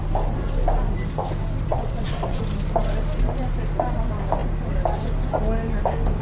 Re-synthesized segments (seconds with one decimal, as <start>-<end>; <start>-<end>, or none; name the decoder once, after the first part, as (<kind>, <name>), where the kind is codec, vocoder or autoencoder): 1.7-2.4 (vocoder, WaveNeXt)